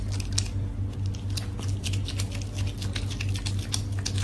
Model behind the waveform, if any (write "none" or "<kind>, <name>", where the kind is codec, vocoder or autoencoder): none